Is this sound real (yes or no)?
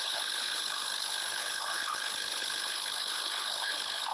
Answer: no